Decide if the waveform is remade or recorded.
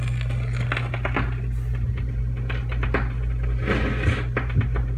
recorded